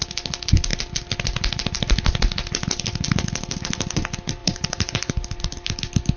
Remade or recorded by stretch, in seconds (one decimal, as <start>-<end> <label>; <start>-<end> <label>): 0.0-4.4 recorded; 4.4-5.1 remade; 5.1-6.2 recorded